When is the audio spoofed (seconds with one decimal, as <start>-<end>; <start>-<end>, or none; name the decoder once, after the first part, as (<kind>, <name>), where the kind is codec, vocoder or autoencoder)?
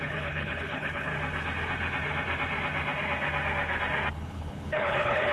0.0-1.1 (codec, HILCodec); 4.1-5.3